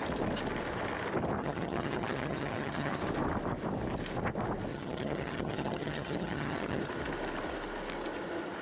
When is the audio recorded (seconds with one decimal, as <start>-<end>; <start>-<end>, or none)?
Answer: 0.0-1.4; 3.0-4.7; 6.8-8.6